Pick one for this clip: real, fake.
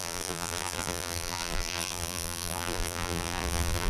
fake